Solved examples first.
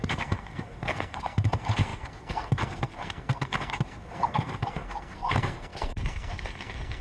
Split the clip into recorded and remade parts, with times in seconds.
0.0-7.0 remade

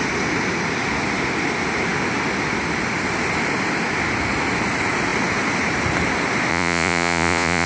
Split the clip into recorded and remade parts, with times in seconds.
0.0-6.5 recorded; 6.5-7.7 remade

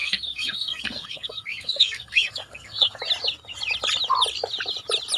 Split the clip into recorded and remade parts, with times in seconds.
0.0-3.0 remade; 3.0-5.2 recorded

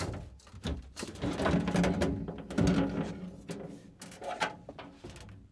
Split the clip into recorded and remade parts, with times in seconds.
0.0-5.5 recorded

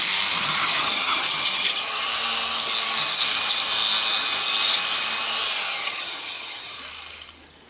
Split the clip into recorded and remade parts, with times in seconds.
0.0-0.4 recorded; 0.4-2.0 remade; 2.0-5.8 recorded; 5.8-6.8 remade; 6.8-7.7 recorded